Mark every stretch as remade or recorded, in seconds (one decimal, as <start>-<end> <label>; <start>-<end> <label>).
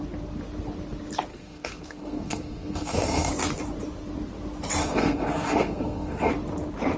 0.0-1.3 recorded; 1.3-3.3 remade; 3.3-4.8 recorded; 4.8-6.3 remade; 6.3-7.0 recorded